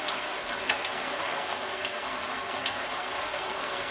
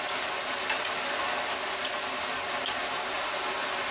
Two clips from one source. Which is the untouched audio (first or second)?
second